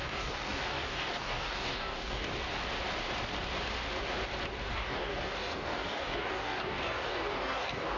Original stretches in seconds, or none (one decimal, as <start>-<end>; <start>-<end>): 2.3-4.7